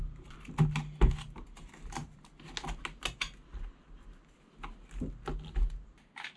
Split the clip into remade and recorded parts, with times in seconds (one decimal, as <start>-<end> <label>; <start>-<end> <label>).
0.0-6.4 recorded